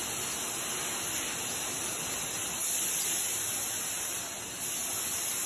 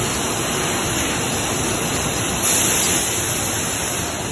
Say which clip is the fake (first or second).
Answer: second